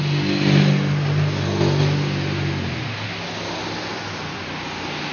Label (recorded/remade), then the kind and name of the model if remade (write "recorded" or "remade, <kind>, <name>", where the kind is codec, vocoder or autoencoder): recorded